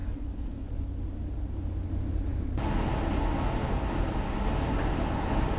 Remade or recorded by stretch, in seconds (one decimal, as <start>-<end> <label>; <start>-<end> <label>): 0.0-0.7 remade; 0.7-5.6 recorded